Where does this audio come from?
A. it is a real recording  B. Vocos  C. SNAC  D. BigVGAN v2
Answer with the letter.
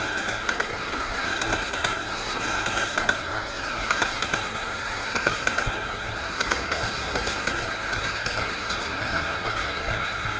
C